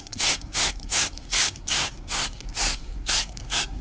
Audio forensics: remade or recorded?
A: remade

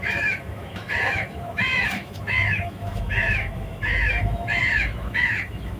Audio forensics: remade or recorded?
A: remade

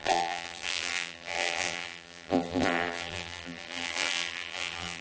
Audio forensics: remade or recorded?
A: remade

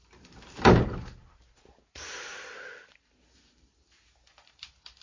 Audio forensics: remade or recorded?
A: remade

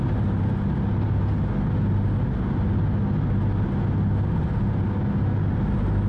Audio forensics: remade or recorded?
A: recorded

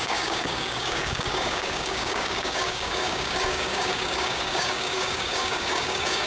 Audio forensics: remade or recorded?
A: remade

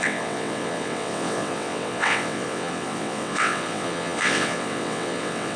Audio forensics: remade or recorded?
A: remade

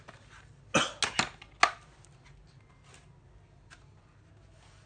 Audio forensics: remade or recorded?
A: recorded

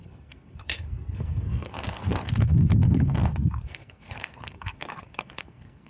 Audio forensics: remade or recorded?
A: remade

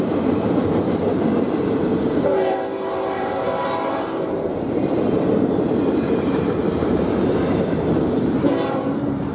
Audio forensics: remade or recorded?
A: remade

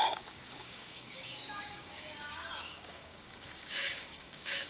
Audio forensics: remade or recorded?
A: remade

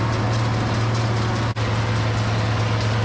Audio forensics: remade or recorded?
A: recorded